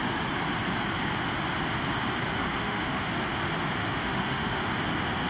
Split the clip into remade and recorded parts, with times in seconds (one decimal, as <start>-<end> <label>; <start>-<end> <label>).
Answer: 0.0-2.5 recorded; 2.5-3.1 remade; 3.1-3.8 recorded; 3.8-4.6 remade; 4.6-5.3 recorded